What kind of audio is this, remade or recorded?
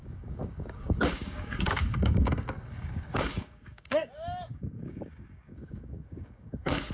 remade